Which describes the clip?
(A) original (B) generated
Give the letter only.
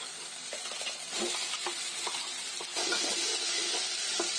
A